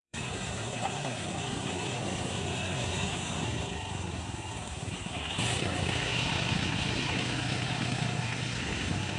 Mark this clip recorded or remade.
remade